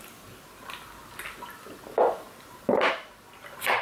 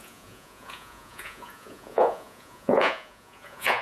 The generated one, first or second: second